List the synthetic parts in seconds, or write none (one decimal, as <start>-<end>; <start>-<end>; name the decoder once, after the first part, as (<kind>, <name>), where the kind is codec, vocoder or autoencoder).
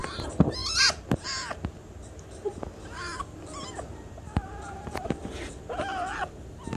none